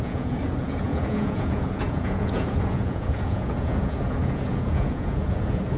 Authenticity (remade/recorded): remade